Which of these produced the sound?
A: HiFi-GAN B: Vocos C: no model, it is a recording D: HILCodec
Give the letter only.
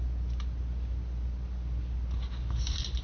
C